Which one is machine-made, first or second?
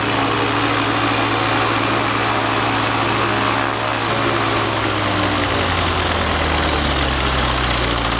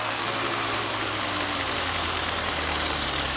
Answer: second